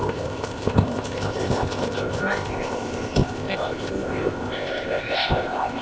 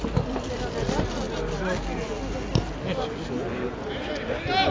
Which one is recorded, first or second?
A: second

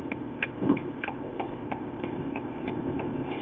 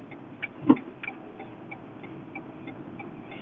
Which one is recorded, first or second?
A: second